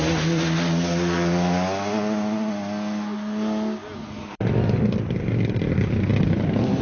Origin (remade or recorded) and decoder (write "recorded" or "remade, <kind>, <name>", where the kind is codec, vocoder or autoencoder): recorded